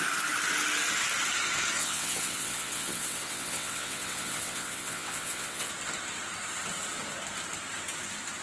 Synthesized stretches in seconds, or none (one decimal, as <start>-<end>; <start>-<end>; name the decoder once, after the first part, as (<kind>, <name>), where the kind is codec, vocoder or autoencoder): 1.8-5.7 (vocoder, WaveNeXt)